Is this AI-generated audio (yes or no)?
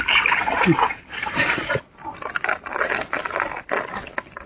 no